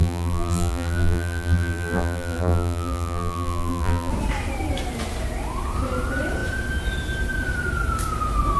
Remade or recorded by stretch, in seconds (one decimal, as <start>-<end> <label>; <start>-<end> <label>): 0.0-4.1 remade; 4.1-8.6 recorded